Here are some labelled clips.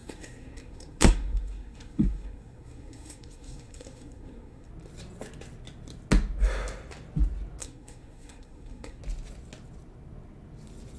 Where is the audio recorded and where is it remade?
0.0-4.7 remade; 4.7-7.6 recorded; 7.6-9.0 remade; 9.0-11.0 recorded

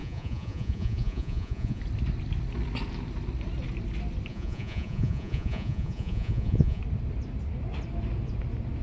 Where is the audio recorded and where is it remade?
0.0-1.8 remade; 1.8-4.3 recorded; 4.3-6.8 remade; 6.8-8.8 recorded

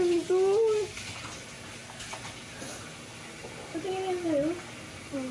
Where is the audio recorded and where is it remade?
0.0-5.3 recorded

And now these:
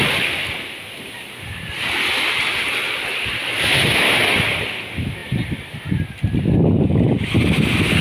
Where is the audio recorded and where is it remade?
0.0-8.0 recorded

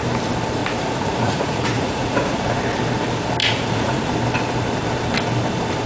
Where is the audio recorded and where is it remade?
0.0-0.6 recorded; 0.6-2.6 remade; 2.6-3.4 recorded; 3.4-4.1 remade; 4.1-5.9 recorded